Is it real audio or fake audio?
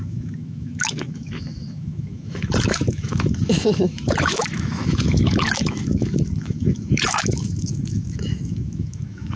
fake